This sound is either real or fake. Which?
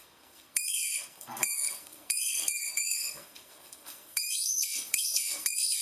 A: fake